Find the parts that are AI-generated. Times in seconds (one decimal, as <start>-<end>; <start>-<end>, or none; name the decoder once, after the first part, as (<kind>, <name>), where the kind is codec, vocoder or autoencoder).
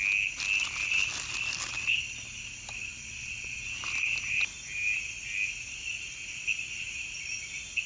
2.8-3.6 (vocoder, Vocos)